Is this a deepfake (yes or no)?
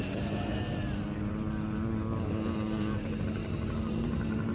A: no